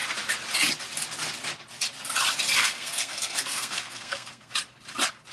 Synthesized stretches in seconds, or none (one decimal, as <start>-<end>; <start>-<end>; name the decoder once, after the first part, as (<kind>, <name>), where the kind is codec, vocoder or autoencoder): 2.6-4.5 (codec, SNAC)